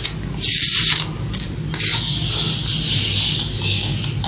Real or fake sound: real